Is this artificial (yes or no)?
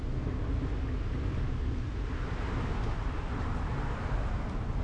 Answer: no